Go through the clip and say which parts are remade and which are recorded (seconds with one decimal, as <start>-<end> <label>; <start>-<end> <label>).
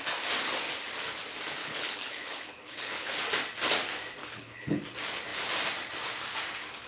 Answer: 0.0-1.6 recorded; 1.6-3.1 remade; 3.1-4.2 recorded; 4.2-4.8 remade; 4.8-6.9 recorded